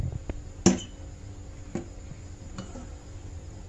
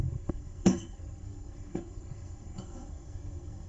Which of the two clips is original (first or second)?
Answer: first